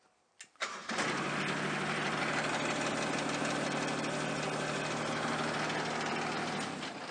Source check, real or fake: real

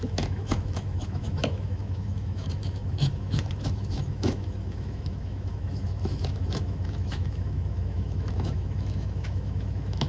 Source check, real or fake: fake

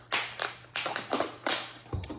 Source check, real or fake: real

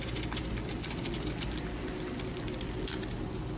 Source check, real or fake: real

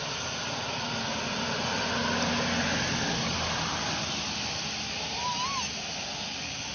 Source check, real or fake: real